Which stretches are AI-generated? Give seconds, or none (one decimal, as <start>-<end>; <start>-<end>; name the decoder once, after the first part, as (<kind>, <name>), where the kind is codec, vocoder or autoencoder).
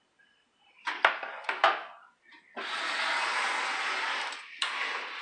none